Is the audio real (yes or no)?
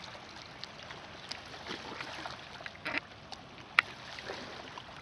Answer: yes